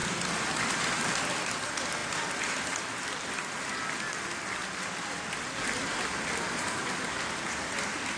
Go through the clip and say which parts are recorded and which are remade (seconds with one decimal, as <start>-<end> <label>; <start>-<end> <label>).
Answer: 0.0-8.2 recorded